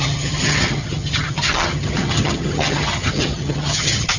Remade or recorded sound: remade